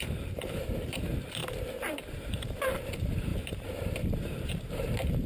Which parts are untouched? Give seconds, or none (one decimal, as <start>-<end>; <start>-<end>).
none